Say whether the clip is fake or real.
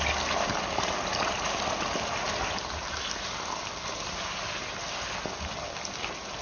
real